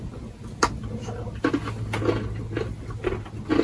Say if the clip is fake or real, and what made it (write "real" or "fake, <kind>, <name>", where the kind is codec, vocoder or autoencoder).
real